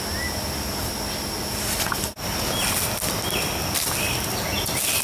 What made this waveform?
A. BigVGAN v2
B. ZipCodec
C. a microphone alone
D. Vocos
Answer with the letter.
C